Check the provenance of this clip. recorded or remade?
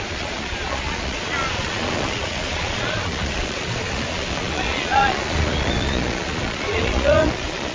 remade